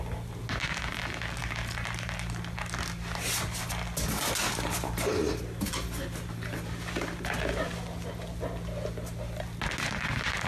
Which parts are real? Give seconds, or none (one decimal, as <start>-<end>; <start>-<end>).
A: 0.0-10.5